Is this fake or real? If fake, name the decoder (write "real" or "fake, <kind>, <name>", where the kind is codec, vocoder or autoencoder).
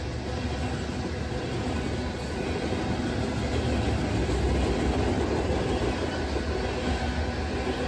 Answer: real